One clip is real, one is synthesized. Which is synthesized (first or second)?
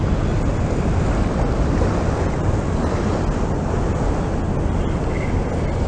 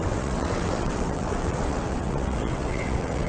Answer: second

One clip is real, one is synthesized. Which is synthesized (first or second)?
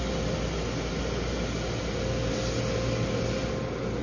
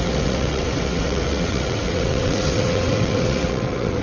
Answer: second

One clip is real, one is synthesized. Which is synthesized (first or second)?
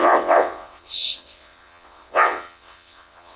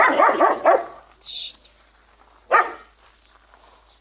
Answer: first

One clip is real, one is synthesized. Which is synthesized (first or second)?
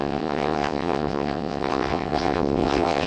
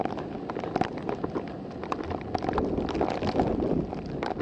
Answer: first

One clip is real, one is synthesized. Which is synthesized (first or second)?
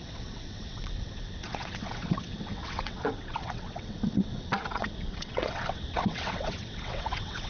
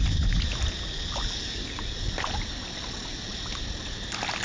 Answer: first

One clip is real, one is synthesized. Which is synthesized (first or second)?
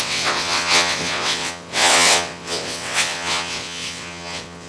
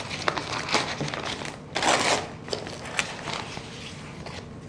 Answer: first